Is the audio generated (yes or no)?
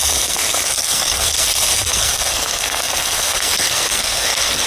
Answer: yes